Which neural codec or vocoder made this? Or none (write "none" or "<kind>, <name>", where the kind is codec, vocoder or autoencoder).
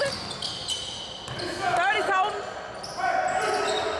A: none